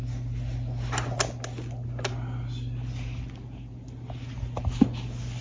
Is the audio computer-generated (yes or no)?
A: no